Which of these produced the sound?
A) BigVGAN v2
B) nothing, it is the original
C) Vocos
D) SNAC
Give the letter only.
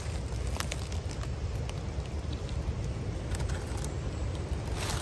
B